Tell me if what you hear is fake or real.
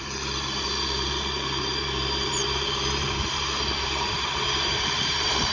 fake